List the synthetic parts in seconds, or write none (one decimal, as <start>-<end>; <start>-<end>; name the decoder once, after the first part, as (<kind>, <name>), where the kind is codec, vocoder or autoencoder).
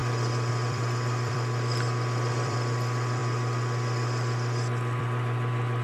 0.5-3.2 (vocoder, BigVGAN v2); 5.0-5.8